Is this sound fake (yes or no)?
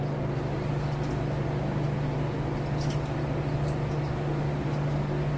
no